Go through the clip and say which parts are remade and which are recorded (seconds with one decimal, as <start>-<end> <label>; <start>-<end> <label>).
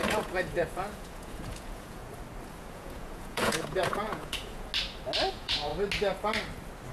0.0-2.0 remade; 2.0-2.6 recorded; 2.6-4.7 remade; 4.7-5.3 recorded; 5.3-5.7 remade; 5.7-6.9 recorded